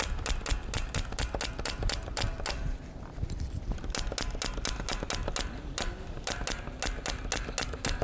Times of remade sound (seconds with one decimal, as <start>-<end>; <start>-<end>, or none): none